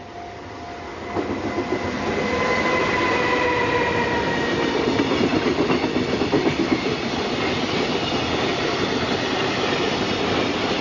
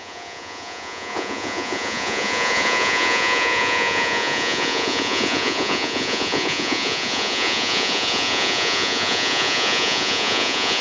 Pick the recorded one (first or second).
first